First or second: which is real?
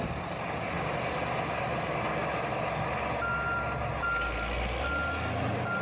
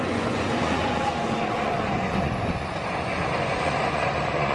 first